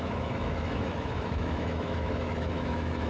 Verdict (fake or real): fake